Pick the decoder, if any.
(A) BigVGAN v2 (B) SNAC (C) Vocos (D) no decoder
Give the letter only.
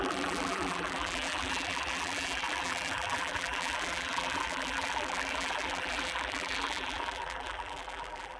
A